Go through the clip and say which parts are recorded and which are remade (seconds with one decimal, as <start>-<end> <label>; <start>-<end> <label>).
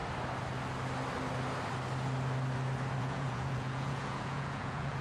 0.0-3.0 recorded; 3.0-5.0 remade